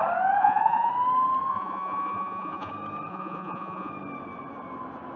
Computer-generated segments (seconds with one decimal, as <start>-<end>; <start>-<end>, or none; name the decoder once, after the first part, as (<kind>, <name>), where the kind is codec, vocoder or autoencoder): 0.4-0.9 (vocoder, Vocos); 1.5-2.7; 3.1-3.9